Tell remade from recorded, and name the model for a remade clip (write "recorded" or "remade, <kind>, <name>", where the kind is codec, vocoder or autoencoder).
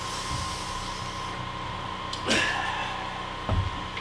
recorded